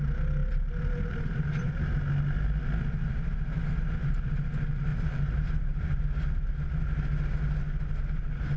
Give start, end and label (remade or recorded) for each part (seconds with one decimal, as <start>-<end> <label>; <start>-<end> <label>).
0.0-0.4 recorded; 0.4-1.7 remade; 1.7-4.9 recorded; 4.9-5.8 remade; 5.8-8.6 recorded